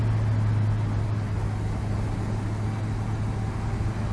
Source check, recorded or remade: recorded